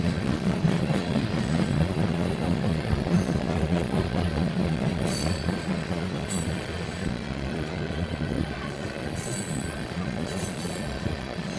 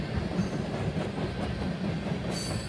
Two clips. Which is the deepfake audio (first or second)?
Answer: first